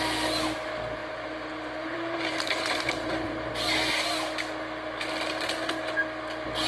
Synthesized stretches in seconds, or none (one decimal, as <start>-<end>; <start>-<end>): 1.0-3.5